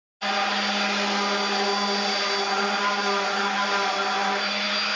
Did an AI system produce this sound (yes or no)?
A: no